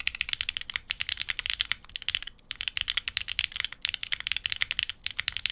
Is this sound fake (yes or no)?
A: no